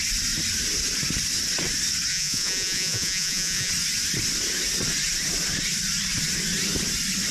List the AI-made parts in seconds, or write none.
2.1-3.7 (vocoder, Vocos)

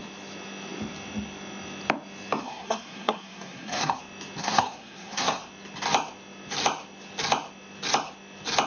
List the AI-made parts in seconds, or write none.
2.4-4.0 (codec, SNAC); 4.4-5.4

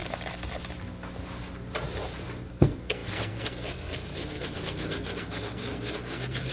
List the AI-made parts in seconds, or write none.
2.5-6.5 (codec, SNAC)

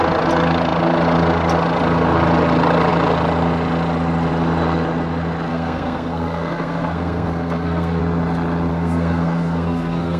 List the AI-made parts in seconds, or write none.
5.5-8.0 (codec, SNAC); 8.7-10.2

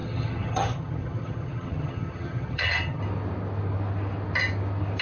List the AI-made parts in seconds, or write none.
0.0-3.0 (vocoder, HiFi-GAN)

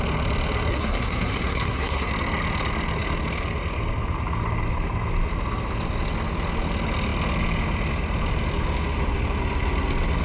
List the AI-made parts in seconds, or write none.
0.7-2.1 (codec, SNAC)